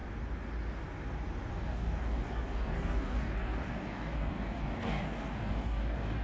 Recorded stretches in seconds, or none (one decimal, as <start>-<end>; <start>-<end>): 0.0-1.5